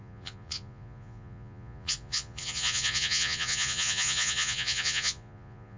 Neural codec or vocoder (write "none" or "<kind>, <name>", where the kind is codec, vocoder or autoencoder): vocoder, Vocos